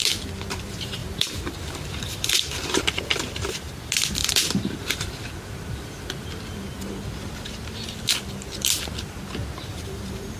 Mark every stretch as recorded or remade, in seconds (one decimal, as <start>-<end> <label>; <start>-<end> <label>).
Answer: 0.0-1.0 recorded; 1.0-2.8 remade; 2.8-4.2 recorded; 4.2-5.0 remade; 5.0-9.7 recorded; 9.7-10.4 remade